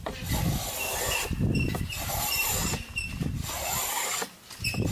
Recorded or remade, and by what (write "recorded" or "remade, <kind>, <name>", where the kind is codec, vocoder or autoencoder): remade, vocoder, BigVGAN v2